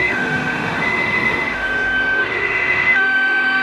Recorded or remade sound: remade